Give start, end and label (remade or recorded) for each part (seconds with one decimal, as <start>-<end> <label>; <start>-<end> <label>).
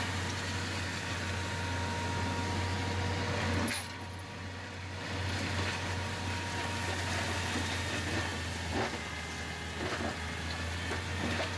0.0-11.6 recorded